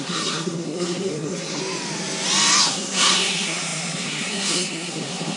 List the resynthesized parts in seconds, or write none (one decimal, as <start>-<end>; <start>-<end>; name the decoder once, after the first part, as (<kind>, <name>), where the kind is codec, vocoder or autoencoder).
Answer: 0.0-1.6 (codec, SNAC); 2.6-5.4